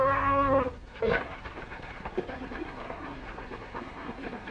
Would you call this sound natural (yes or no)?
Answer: no